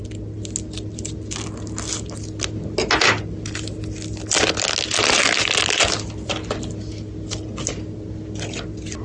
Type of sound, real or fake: real